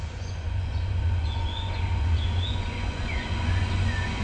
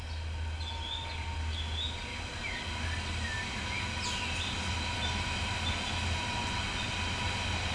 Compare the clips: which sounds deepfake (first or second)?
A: first